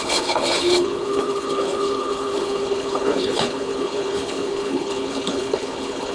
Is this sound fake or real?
fake